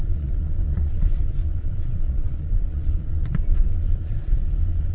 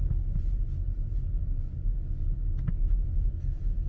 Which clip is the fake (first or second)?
first